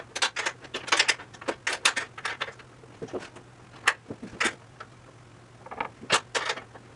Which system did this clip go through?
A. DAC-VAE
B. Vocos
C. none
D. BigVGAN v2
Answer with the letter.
C